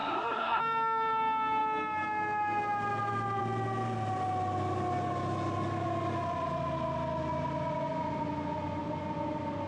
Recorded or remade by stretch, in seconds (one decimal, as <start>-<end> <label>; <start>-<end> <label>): 0.0-0.6 remade; 0.6-9.7 recorded